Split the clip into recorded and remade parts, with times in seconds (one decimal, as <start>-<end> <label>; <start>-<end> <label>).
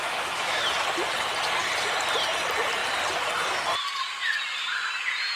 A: 0.0-0.6 remade; 0.6-5.4 recorded